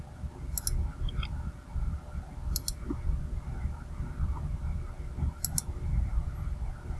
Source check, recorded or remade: recorded